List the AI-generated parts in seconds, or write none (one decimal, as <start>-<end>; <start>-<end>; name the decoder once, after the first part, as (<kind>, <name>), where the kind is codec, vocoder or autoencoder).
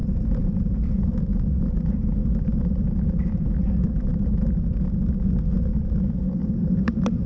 0.0-1.2 (vocoder, BigVGAN v2)